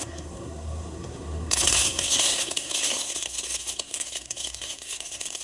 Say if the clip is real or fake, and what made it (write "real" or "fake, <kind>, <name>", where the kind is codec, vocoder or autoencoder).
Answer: fake, codec, SNAC